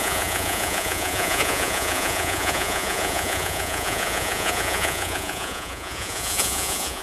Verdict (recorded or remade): remade